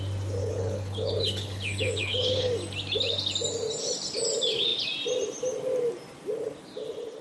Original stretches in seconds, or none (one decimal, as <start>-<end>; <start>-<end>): 0.0-0.4; 2.5-7.2